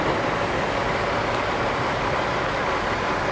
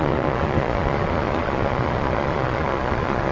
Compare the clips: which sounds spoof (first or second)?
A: second